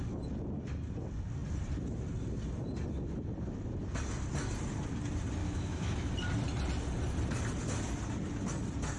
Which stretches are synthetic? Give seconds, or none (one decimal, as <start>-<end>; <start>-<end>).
5.4-6.1